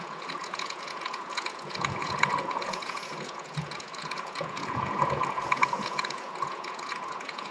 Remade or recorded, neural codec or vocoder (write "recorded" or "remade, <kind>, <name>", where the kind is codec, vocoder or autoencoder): remade, vocoder, Vocos